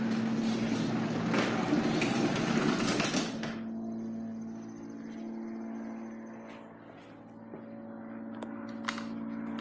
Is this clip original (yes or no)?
yes